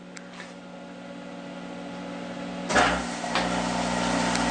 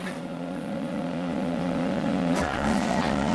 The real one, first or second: first